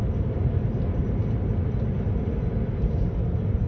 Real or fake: real